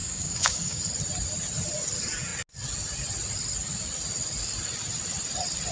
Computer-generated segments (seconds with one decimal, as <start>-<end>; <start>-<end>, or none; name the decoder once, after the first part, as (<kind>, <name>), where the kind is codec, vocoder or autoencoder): 0.0-0.8 (codec, DAC)